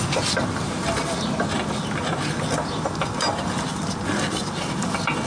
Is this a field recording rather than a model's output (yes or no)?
yes